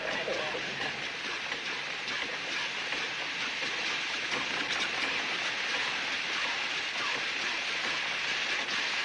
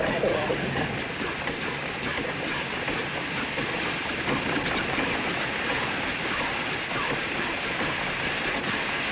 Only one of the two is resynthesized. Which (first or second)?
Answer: second